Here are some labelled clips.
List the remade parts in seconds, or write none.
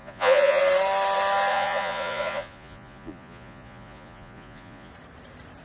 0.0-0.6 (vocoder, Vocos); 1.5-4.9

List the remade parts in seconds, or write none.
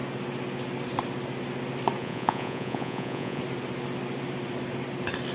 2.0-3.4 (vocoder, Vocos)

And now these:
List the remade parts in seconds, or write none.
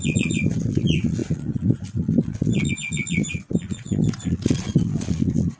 0.0-5.6 (vocoder, Vocos)